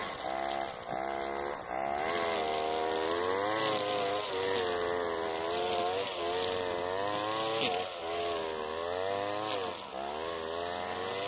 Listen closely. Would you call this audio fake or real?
real